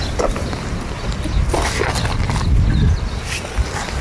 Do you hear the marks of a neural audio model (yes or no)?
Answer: no